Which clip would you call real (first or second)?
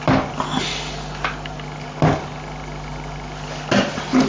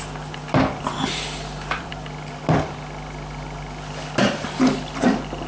first